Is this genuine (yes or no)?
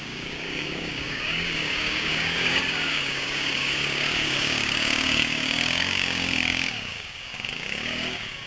no